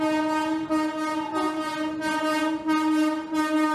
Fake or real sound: real